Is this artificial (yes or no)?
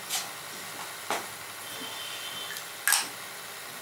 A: no